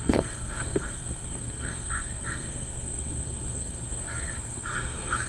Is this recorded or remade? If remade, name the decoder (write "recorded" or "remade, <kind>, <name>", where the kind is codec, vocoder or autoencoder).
remade, codec, SNAC